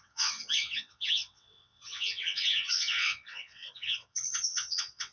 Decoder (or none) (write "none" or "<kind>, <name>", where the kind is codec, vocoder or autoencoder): vocoder, WaveNeXt